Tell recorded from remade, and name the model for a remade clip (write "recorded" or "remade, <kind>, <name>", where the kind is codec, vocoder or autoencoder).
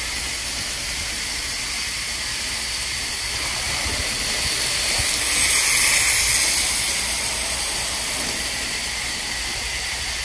recorded